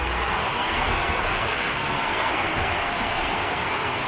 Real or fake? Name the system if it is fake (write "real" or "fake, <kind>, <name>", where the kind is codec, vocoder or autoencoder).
fake, codec, SNAC